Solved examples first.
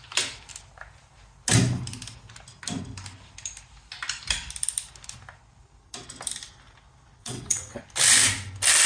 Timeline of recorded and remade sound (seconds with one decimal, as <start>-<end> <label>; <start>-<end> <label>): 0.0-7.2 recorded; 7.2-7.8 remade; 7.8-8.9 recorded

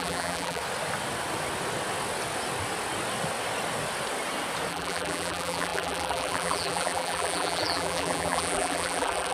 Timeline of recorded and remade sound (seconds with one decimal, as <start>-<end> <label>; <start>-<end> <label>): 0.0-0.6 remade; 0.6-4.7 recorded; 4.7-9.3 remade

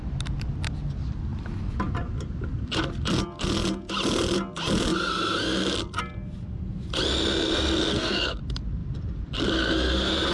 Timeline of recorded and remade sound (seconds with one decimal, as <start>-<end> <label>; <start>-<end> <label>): 0.0-7.8 recorded; 7.8-8.4 remade; 8.4-10.3 recorded

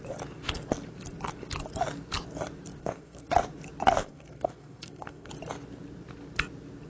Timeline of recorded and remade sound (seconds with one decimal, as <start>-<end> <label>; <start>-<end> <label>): 0.0-2.8 recorded; 2.8-3.3 remade; 3.3-4.0 recorded; 4.0-5.3 remade; 5.3-6.9 recorded

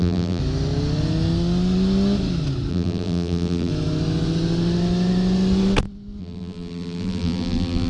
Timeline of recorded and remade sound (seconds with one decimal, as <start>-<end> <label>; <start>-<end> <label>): 0.0-0.4 remade; 0.4-2.7 recorded; 2.7-3.7 remade; 3.7-6.2 recorded; 6.2-7.9 remade